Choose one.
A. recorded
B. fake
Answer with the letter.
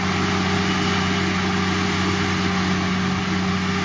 A